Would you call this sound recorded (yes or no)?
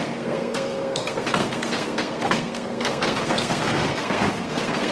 no